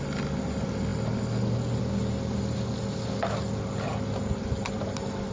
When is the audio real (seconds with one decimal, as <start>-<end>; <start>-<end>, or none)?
0.0-5.3